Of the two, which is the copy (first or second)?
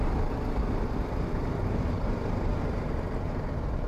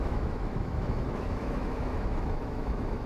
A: second